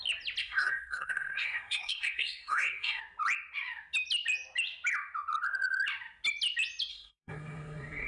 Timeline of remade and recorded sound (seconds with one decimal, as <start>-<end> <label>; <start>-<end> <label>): 0.0-0.4 recorded; 0.4-3.0 remade; 3.0-6.9 recorded; 6.9-8.1 remade